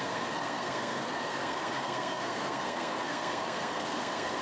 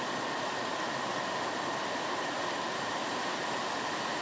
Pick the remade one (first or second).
first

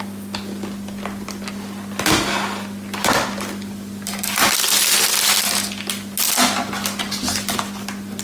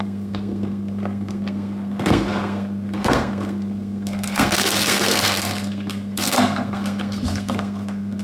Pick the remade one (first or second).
second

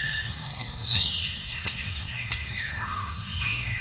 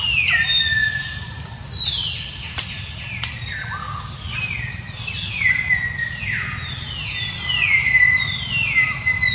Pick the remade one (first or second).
first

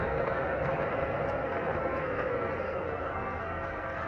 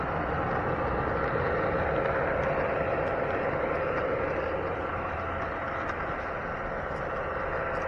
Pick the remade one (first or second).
first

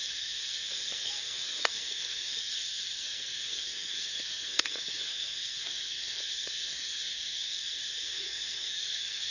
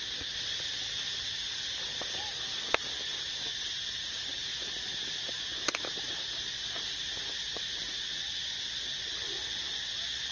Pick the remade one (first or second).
first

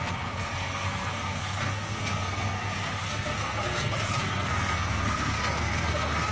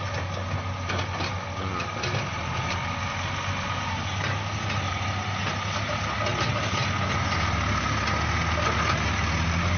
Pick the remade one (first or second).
first